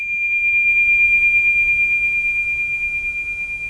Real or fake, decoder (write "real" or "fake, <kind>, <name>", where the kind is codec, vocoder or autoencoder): real